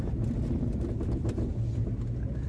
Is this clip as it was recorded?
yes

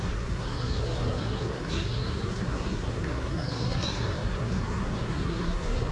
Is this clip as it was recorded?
no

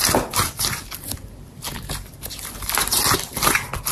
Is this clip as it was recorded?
yes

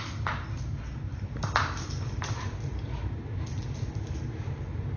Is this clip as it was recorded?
yes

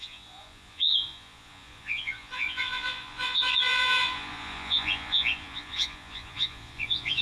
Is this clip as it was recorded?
no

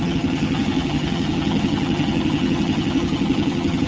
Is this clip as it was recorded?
no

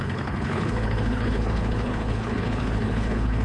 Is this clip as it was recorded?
no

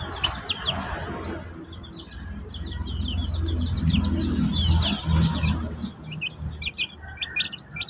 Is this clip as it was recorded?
yes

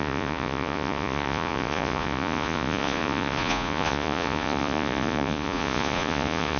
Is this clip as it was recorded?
no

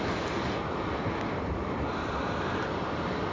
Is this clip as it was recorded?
yes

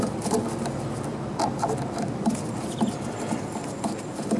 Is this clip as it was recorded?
yes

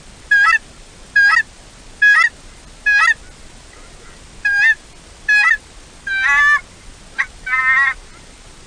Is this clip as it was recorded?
yes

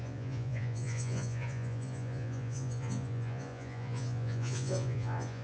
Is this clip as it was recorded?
no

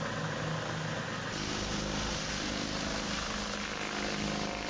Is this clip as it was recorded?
yes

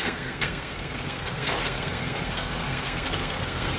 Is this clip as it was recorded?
no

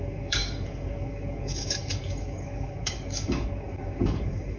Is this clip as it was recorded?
no